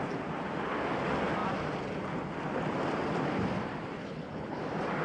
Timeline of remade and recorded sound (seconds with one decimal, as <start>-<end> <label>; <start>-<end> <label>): 0.0-4.0 recorded; 4.0-4.6 remade; 4.6-5.0 recorded